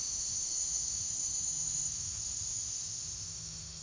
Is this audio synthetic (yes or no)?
yes